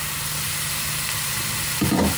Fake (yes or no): no